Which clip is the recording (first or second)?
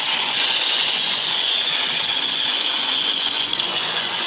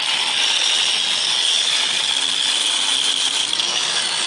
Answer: second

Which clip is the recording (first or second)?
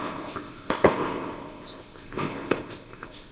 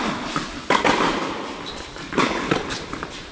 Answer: second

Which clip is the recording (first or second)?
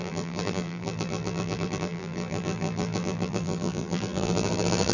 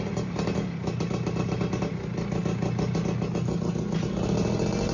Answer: second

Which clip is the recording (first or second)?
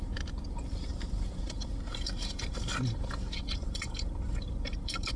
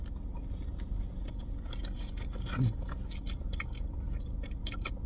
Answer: second